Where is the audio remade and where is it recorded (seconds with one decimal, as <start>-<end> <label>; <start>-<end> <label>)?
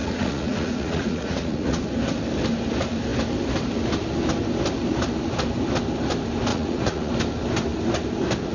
0.0-1.8 remade; 1.8-6.5 recorded; 6.5-7.1 remade; 7.1-8.5 recorded